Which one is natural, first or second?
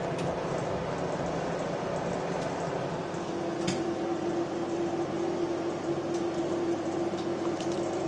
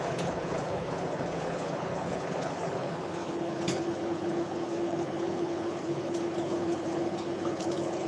first